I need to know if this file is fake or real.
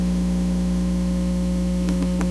fake